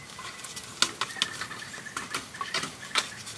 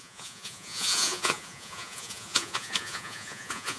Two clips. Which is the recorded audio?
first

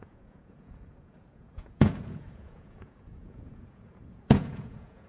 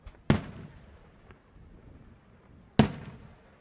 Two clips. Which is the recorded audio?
second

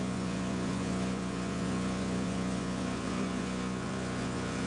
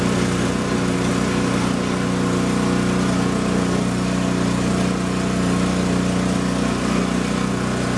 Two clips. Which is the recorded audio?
second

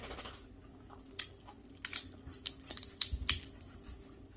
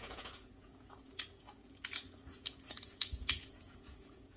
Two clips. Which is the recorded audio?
first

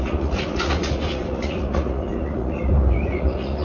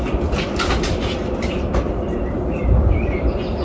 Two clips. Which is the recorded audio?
second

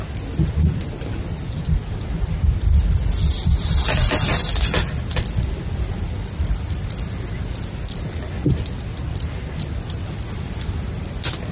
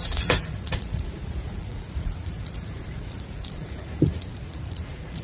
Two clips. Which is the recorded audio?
first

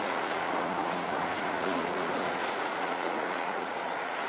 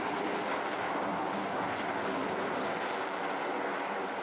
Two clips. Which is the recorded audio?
second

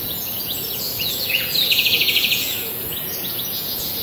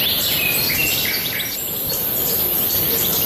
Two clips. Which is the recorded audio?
second